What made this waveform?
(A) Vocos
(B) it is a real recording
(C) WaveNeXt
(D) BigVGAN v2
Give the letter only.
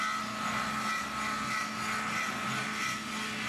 B